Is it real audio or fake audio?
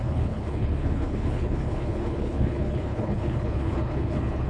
fake